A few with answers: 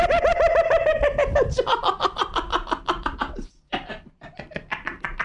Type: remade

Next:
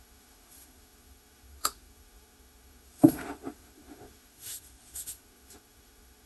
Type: remade